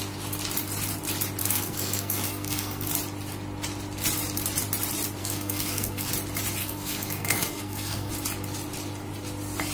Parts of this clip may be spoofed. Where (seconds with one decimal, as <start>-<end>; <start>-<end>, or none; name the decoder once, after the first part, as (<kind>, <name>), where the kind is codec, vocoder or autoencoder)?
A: 1.4-2.9 (codec, SNAC); 5.2-6.1; 6.6-8.1